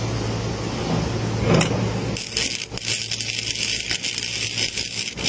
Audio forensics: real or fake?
real